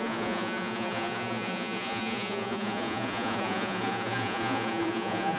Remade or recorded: remade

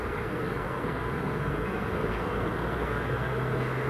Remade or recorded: remade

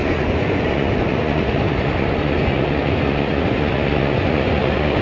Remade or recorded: remade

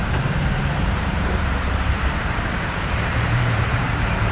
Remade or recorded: remade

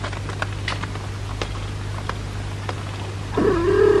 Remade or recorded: recorded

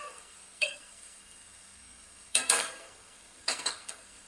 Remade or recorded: remade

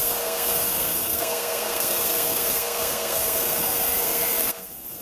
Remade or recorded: remade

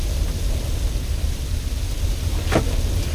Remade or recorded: recorded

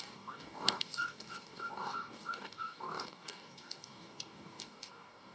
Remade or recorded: remade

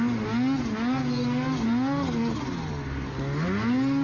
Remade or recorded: recorded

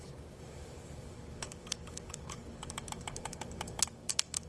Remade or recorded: remade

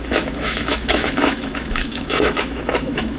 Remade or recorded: remade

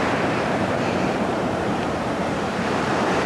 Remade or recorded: remade